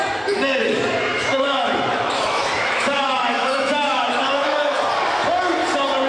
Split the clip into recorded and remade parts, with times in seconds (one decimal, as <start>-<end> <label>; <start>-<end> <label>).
0.0-1.1 recorded; 1.1-4.8 remade; 4.8-6.1 recorded

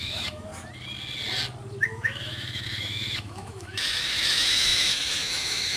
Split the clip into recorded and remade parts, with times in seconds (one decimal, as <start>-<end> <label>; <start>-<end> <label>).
0.0-0.5 remade; 0.5-1.8 recorded; 1.8-5.8 remade

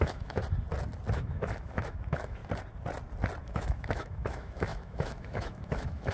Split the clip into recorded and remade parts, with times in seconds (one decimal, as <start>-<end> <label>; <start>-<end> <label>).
0.0-0.4 remade; 0.4-1.1 recorded; 1.1-2.4 remade; 2.4-3.4 recorded; 3.4-6.1 remade

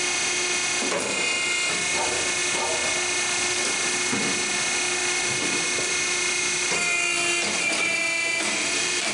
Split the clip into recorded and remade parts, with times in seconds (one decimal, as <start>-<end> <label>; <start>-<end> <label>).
0.0-9.1 recorded